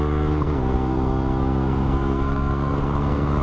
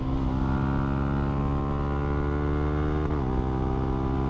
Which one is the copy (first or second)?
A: first